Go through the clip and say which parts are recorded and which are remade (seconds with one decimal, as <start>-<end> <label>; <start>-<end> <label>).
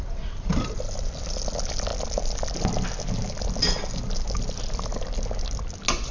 0.0-6.1 recorded